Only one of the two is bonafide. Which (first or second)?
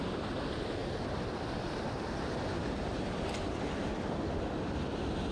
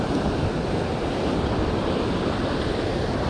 first